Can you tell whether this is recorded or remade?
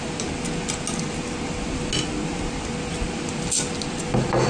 recorded